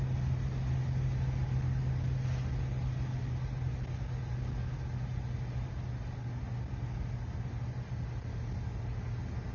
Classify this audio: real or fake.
real